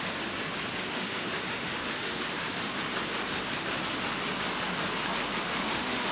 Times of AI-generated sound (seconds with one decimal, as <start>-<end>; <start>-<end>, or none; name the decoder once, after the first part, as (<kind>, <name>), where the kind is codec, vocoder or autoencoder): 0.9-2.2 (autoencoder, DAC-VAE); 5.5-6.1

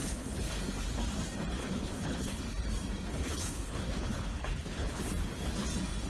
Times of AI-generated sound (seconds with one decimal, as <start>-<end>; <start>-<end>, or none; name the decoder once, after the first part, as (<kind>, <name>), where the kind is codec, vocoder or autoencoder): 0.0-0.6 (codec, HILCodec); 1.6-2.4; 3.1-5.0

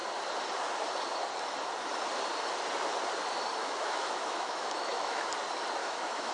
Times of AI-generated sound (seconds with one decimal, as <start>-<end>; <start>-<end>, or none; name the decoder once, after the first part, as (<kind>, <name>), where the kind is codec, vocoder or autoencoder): 3.6-5.3 (autoencoder, DAC-VAE); 5.8-6.3

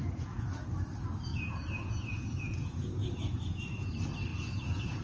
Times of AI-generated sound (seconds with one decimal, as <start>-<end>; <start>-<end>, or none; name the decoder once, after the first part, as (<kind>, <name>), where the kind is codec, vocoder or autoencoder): 0.0-0.7 (vocoder, Vocos); 1.3-3.6; 4.3-5.0

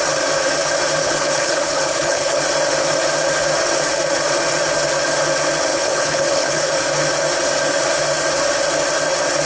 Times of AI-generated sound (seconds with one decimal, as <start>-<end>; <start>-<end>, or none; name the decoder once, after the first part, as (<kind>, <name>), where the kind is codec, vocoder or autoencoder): 1.0-2.4 (codec, HILCodec); 5.7-6.7

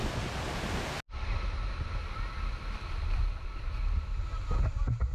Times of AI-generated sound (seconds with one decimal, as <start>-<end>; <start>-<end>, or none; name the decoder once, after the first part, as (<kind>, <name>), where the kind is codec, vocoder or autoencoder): none

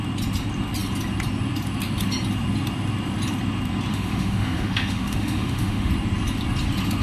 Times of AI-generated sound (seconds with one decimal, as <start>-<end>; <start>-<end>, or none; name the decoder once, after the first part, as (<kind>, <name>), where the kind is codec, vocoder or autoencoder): 3.9-5.9 (autoencoder, DAC-VAE)

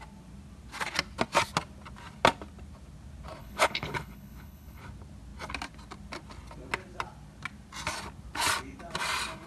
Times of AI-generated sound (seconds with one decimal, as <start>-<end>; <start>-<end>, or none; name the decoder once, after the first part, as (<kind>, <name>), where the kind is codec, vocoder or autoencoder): 3.4-4.8 (codec, HILCodec)